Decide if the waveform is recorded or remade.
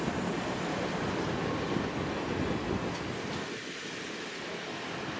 recorded